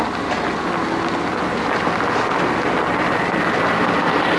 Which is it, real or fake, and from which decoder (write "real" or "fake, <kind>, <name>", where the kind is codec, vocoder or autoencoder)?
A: real